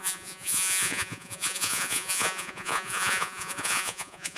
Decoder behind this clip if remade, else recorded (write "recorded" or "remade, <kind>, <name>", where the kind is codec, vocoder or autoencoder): remade, vocoder, Vocos